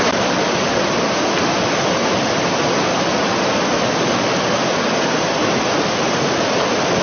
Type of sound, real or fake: real